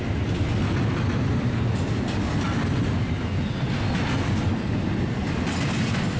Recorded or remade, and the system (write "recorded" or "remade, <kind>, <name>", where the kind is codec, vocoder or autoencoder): recorded